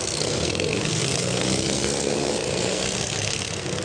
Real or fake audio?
fake